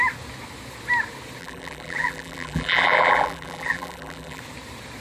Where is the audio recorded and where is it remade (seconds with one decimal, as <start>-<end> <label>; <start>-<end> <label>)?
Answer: 0.0-1.4 recorded; 1.4-4.4 remade; 4.4-5.0 recorded